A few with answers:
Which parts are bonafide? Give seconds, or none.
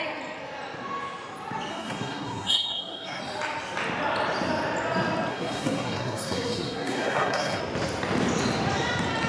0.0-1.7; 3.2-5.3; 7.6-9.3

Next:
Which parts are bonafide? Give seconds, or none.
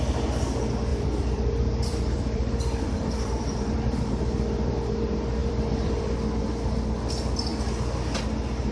0.0-0.9; 4.7-5.4; 6.0-8.7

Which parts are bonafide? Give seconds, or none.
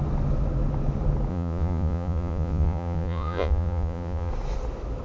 0.0-1.3; 4.3-5.0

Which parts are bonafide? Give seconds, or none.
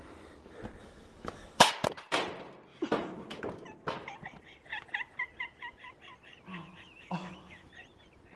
0.0-0.8; 1.7-2.7; 3.4-6.5; 7.7-8.4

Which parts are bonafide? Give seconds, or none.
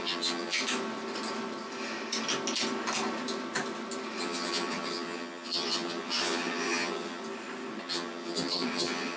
0.6-4.2; 7.2-7.8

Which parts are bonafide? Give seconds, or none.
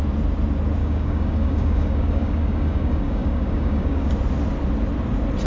0.0-0.8; 4.1-5.5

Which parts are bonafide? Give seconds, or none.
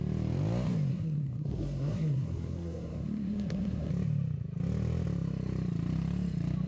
0.0-0.9; 3.9-6.7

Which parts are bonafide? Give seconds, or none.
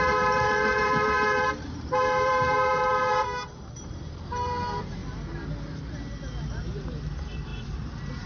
5.0-6.6